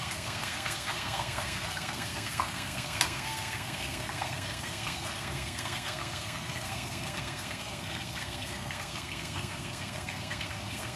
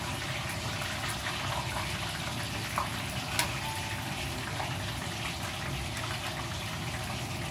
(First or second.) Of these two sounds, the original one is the second